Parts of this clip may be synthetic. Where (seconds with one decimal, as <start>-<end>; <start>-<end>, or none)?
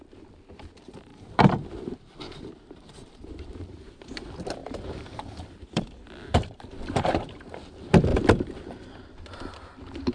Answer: 1.1-4.0; 4.6-7.6; 8.1-8.9